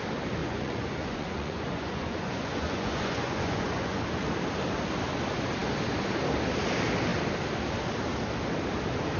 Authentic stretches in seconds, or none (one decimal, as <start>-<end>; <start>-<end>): 0.0-0.4; 4.0-9.2